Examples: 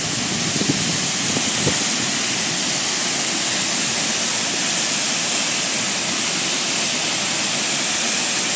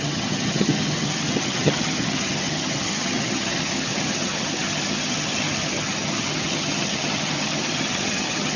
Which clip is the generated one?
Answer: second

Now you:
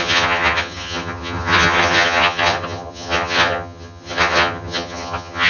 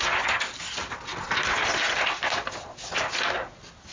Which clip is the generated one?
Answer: first